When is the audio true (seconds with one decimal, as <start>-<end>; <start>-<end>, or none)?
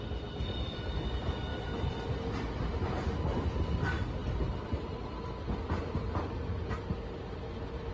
0.0-7.9